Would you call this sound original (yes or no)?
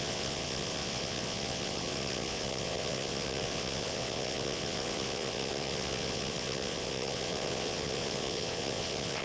no